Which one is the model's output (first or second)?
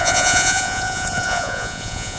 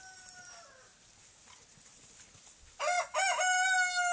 first